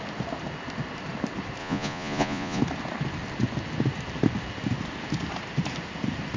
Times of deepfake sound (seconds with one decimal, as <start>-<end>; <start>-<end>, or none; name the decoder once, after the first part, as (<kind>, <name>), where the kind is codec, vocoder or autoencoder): 1.6-2.6 (vocoder, Vocos)